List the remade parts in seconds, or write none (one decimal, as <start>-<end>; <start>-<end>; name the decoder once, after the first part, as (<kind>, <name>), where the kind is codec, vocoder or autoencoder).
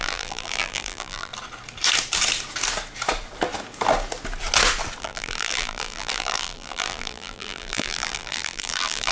0.0-1.3 (vocoder, BigVGAN v2); 5.0-9.1